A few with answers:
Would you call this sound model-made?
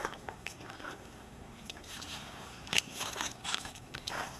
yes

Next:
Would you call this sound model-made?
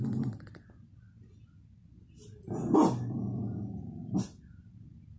no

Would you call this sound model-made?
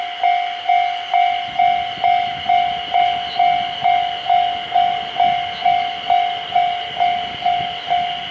no